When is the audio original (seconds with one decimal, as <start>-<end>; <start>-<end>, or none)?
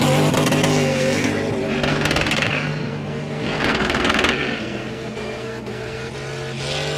0.0-0.7; 1.3-1.9; 6.1-7.0